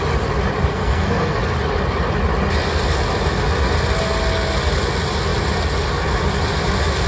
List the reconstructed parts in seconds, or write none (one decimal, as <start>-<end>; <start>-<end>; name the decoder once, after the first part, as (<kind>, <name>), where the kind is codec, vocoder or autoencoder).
0.7-1.4 (codec, SNAC)